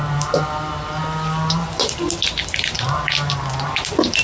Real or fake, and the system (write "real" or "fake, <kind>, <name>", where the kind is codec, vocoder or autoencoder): real